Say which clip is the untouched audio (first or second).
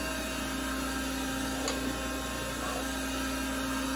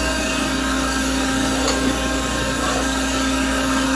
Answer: first